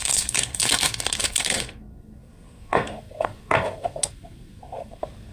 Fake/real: fake